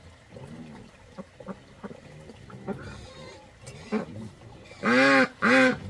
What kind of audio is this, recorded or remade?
recorded